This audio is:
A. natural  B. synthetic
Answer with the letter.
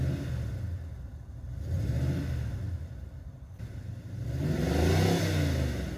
A